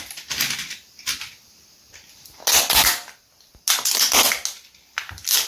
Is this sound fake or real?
real